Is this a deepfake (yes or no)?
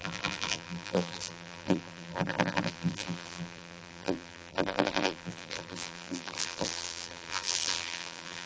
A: yes